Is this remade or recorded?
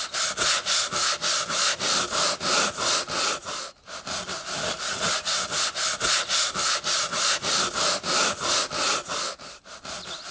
recorded